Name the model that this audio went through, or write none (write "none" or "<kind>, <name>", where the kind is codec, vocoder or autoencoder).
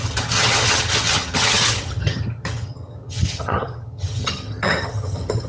vocoder, HiFi-GAN